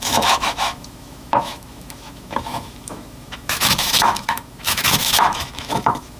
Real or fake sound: fake